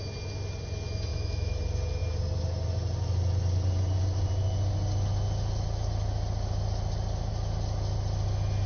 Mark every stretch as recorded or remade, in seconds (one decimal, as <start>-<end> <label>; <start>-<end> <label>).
0.0-1.1 recorded; 1.1-1.6 remade; 1.6-8.7 recorded